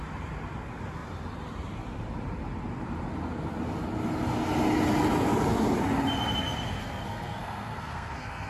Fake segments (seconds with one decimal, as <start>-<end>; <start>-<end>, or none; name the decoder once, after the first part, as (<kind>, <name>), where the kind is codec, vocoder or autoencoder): 6.8-8.5 (codec, SNAC)